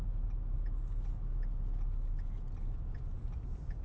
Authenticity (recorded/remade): recorded